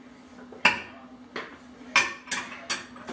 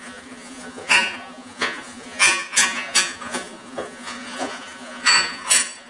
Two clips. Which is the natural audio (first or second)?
first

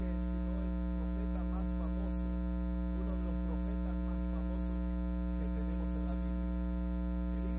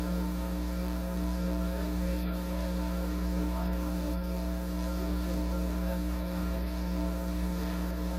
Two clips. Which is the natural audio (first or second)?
first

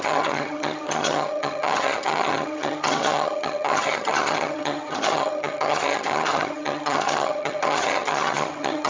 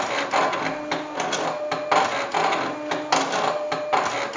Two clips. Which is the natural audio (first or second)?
second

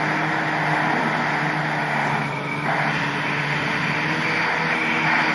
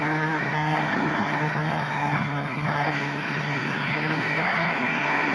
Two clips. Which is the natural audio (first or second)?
first